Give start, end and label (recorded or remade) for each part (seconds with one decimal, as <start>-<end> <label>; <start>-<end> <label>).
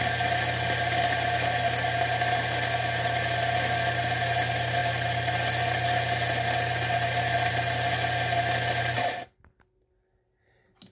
0.0-10.9 recorded